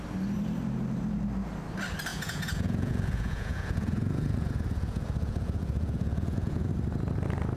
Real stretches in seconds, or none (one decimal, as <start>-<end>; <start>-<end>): 0.0-2.1; 6.7-7.6